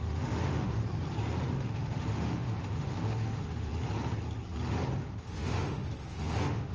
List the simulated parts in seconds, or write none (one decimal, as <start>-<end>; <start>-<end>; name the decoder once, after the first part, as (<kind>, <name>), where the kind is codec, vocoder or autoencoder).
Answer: 0.0-0.8 (autoencoder, DAC-VAE); 1.5-3.7; 5.0-6.7